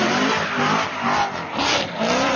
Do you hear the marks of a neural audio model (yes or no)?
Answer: no